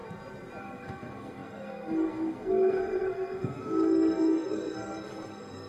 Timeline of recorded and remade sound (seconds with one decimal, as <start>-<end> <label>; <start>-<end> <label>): 0.0-0.6 recorded; 0.6-5.7 remade